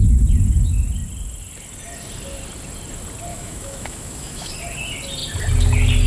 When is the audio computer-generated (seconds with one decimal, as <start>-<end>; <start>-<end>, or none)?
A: 3.3-4.5